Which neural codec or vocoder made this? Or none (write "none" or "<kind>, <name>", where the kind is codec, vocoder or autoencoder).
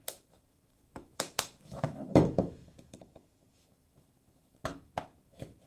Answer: autoencoder, DAC-VAE